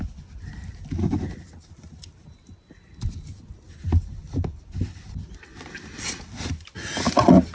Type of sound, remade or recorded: recorded